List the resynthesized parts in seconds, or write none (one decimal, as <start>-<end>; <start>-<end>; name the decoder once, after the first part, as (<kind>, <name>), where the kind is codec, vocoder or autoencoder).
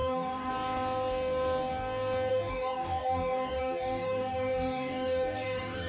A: 0.0-0.5 (codec, DAC); 2.3-5.9